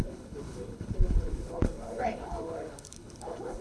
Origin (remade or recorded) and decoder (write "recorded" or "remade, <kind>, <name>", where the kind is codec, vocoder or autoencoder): remade, codec, HILCodec